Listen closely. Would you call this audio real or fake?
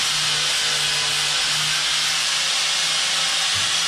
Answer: real